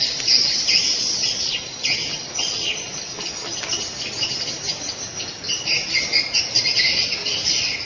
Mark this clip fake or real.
real